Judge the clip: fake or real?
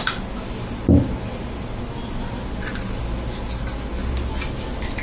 real